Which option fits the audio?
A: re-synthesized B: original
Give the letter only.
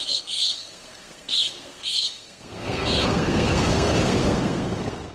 A